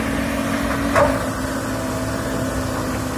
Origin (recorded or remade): recorded